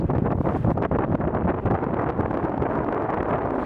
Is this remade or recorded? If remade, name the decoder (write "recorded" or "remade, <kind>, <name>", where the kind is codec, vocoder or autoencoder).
recorded